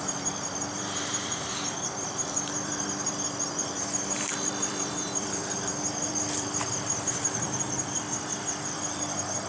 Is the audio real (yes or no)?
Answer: no